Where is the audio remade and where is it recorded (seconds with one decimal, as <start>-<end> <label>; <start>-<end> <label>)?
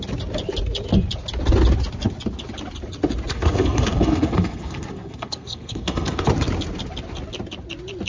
0.0-3.3 recorded; 3.3-6.3 remade; 6.3-8.1 recorded